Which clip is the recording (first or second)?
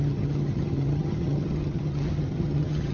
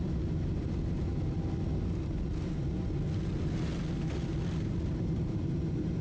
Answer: second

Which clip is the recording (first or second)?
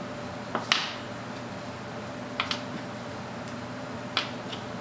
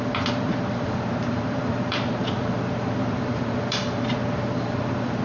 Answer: first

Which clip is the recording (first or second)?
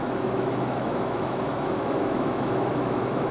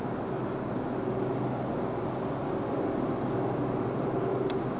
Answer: second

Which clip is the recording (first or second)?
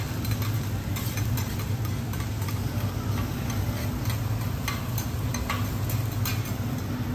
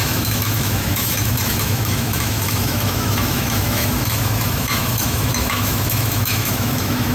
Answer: first